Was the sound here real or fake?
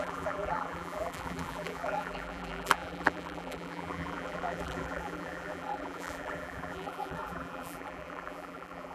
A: fake